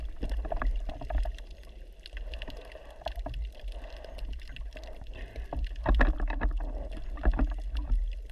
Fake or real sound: real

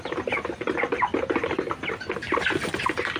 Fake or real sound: real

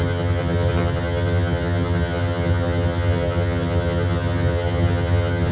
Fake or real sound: fake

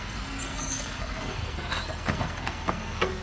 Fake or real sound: fake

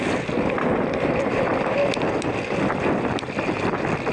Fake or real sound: real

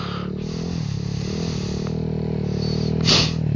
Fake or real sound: real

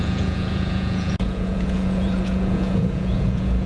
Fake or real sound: fake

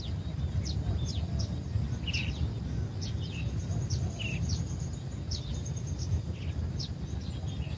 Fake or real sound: real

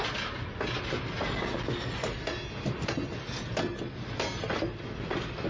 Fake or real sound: real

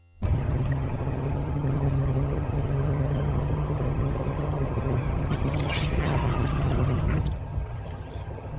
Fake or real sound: fake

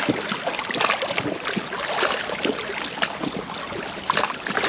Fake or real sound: real